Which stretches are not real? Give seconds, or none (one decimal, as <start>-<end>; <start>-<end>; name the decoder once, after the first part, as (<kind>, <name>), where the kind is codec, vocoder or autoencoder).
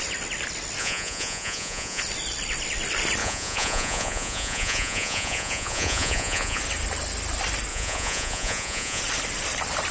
0.8-2.0 (vocoder, Vocos); 3.2-6.6; 7.7-9.0